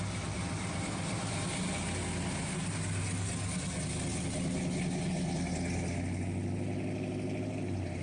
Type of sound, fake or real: real